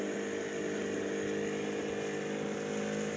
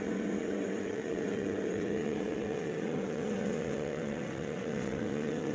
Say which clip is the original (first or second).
first